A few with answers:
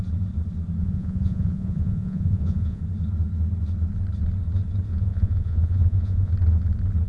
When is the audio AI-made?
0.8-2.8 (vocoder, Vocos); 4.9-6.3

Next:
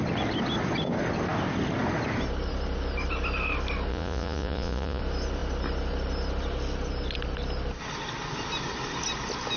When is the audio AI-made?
3.9-5.0 (vocoder, Vocos)

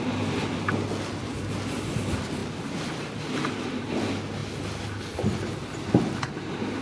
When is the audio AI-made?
none

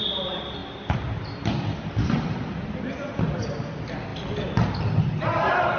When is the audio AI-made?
none

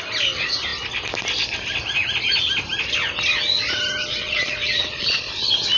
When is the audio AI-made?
4.1-5.3 (vocoder, Vocos)

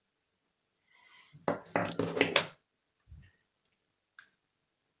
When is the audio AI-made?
none

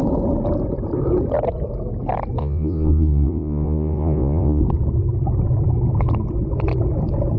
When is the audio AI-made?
2.4-4.6 (vocoder, Vocos)